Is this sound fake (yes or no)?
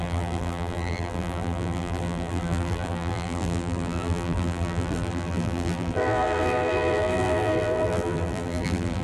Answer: yes